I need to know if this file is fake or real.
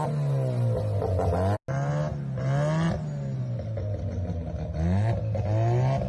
real